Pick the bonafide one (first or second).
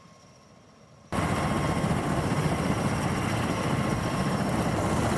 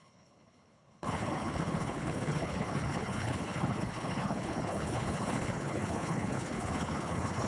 first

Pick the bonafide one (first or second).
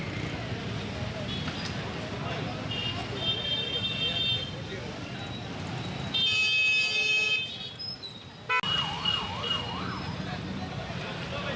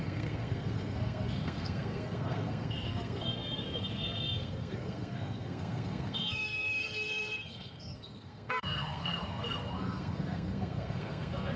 first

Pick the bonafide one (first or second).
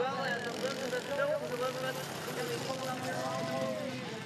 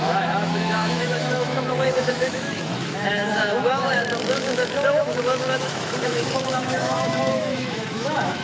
first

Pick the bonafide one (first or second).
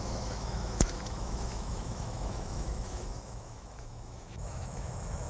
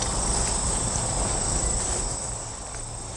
second